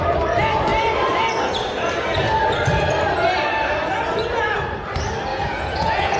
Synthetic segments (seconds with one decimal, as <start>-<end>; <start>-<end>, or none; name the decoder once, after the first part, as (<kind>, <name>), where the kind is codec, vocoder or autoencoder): 5.3-6.2 (vocoder, Vocos)